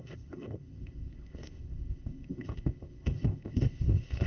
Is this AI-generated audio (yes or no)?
yes